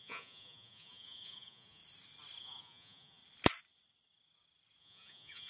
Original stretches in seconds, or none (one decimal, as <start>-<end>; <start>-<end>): 1.8-2.4; 3.2-4.8